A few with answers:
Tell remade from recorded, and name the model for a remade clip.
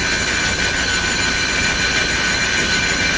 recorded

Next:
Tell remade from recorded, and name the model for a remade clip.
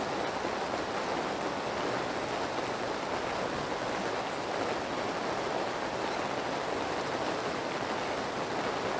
recorded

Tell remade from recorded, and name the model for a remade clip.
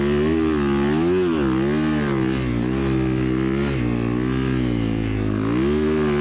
recorded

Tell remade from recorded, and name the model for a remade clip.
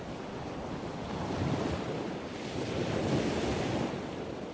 recorded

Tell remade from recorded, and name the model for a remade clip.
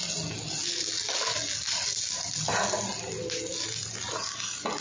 recorded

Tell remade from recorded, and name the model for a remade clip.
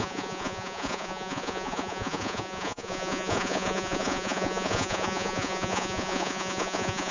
remade, vocoder, Vocos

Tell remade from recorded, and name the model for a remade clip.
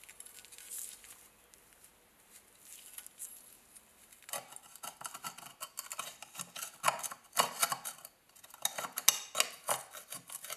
recorded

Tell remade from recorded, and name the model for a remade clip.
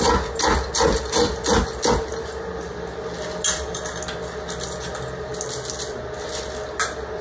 recorded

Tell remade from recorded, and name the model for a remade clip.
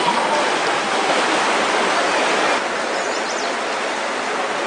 recorded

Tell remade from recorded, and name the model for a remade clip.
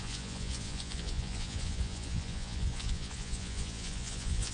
remade, vocoder, Vocos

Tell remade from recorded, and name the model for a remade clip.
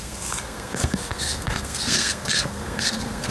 remade, codec, SNAC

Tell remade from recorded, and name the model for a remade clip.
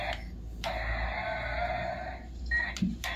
recorded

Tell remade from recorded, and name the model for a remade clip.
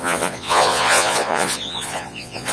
remade, vocoder, Vocos